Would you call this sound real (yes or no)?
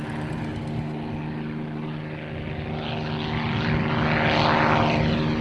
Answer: yes